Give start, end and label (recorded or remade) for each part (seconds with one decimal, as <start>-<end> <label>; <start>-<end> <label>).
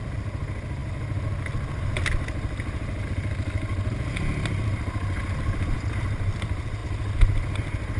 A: 0.0-8.0 recorded